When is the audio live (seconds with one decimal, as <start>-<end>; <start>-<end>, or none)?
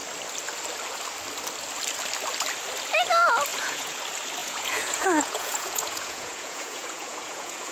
0.0-3.5; 4.0-4.4